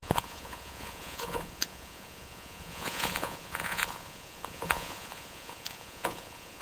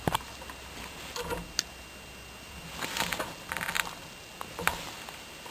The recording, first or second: second